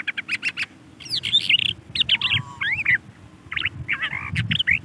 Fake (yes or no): no